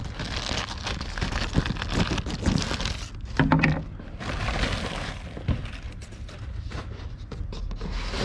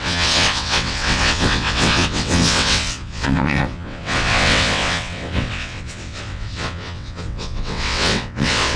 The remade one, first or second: second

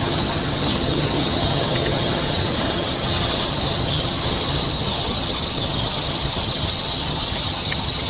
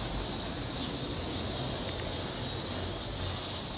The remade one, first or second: first